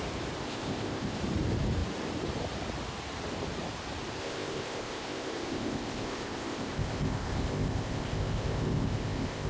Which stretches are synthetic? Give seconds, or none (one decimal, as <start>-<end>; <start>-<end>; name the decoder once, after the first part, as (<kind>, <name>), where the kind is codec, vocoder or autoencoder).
0.5-1.2 (codec, ZipCodec); 4.2-9.5